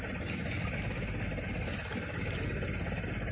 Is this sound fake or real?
real